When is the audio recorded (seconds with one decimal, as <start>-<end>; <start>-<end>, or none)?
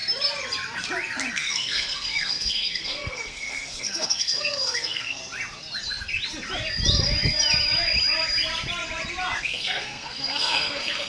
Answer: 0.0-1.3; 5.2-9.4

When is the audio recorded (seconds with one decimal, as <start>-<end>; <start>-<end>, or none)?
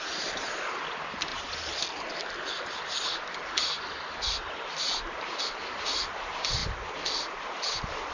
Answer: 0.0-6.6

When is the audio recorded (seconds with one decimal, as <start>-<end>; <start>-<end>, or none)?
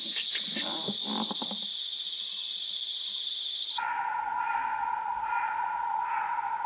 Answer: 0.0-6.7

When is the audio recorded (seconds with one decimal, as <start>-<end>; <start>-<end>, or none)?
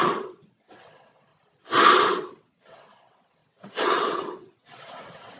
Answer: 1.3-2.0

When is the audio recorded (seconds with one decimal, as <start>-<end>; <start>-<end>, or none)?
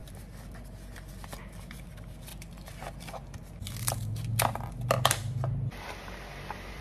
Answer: 0.0-6.8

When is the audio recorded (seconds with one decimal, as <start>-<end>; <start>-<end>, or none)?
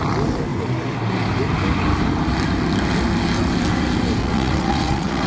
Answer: 0.0-4.2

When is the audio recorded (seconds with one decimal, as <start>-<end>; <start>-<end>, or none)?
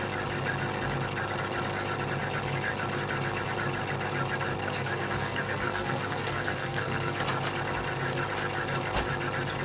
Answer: 0.0-4.6; 7.2-9.6